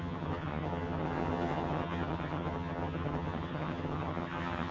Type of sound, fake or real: fake